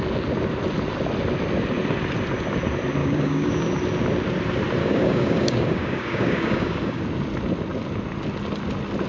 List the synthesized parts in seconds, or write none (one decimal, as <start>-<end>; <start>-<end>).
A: 3.0-3.5; 4.8-7.0